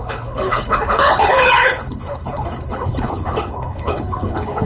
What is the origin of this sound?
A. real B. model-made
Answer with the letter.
B